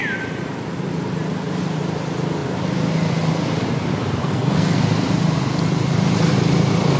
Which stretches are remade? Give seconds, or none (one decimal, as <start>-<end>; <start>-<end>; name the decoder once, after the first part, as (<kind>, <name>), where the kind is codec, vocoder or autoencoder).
4.2-4.8 (codec, SNAC)